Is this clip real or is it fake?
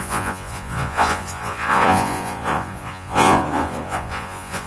fake